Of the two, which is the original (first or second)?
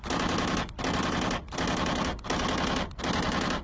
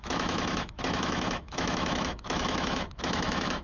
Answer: first